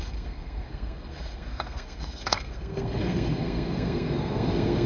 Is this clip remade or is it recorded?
remade